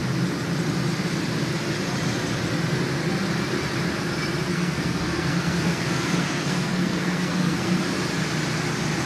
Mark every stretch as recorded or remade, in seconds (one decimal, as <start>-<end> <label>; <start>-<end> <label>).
0.0-4.5 recorded; 4.5-7.8 remade; 7.8-9.1 recorded

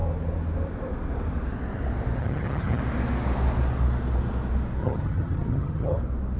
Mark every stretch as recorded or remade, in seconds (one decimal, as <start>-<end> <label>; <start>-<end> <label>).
0.0-2.2 recorded; 2.2-2.8 remade; 2.8-4.8 recorded; 4.8-6.0 remade; 6.0-6.4 recorded